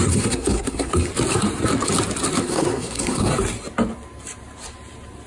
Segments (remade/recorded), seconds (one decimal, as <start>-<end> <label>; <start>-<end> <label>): 0.0-1.1 remade; 1.1-2.4 recorded; 2.4-3.3 remade; 3.3-5.3 recorded